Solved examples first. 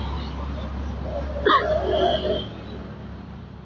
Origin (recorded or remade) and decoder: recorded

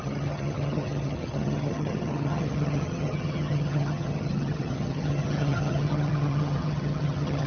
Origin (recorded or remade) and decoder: remade, vocoder, HiFi-GAN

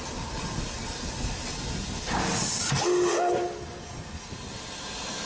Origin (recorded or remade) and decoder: recorded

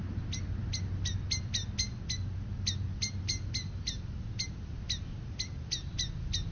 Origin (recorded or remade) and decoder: recorded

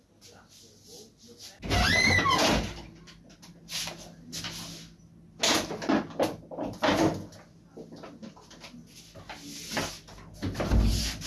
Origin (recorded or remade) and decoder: recorded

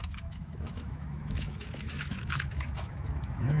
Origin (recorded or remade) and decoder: remade, autoencoder, DAC-VAE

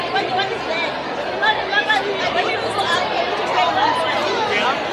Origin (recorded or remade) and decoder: recorded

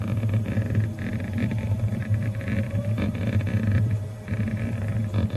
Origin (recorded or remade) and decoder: remade, vocoder, BigVGAN v2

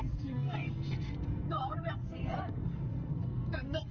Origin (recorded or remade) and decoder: remade, codec, SNAC